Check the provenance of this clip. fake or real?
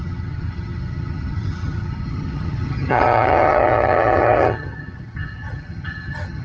fake